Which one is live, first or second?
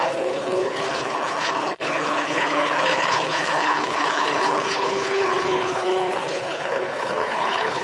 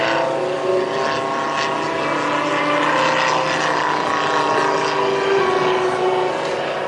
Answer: second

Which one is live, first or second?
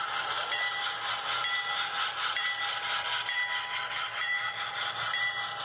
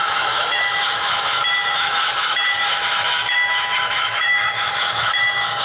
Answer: first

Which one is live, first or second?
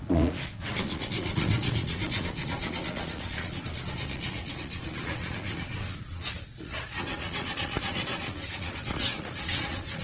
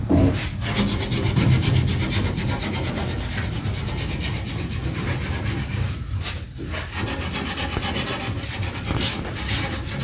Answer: second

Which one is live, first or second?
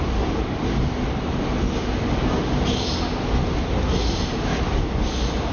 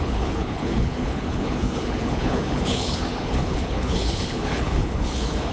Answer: first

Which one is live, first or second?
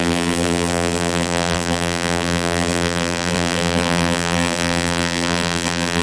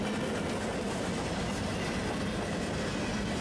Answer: second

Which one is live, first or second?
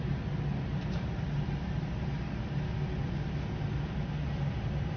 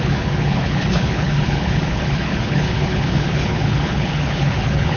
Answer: first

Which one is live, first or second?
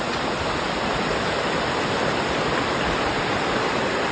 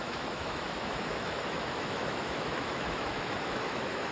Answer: first